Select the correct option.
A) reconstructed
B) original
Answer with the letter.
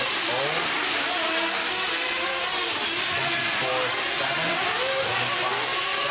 B